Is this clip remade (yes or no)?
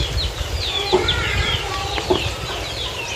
no